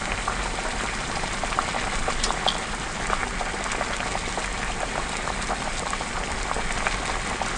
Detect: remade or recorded recorded